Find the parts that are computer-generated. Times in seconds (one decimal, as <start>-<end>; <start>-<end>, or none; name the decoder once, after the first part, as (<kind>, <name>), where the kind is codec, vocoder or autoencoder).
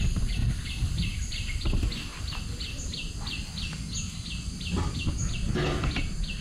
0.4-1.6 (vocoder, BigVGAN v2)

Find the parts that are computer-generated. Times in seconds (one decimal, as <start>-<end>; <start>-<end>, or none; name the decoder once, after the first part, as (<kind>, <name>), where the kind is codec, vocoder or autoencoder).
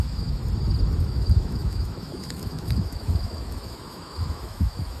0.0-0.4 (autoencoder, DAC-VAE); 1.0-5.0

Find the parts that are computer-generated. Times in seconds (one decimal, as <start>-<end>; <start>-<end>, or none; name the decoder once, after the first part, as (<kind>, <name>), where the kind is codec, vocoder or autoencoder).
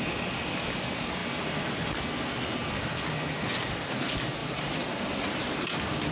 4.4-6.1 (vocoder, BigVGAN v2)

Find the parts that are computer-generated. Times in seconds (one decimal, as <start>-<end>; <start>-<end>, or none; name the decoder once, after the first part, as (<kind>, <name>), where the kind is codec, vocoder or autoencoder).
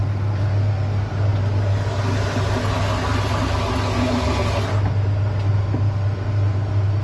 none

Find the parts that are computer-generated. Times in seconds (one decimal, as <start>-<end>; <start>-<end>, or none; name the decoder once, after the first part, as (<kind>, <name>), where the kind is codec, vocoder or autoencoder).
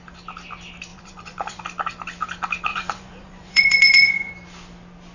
0.9-1.6 (vocoder, Vocos); 2.7-4.3